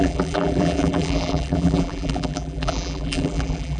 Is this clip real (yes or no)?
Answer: no